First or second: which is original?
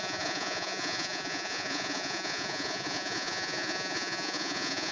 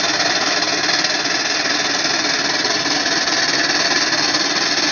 second